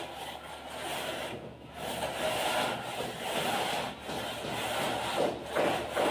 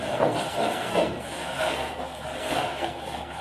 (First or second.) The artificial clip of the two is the second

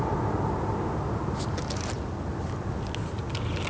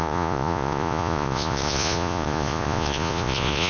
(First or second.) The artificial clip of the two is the second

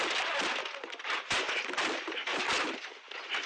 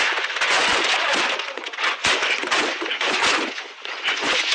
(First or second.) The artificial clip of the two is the second